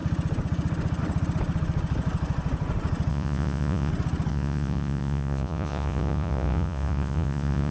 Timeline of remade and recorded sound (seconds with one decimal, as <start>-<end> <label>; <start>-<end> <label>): 0.0-3.1 recorded; 3.1-3.9 remade; 3.9-4.3 recorded; 4.3-7.7 remade